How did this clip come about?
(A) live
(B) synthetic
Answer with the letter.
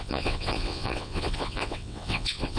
B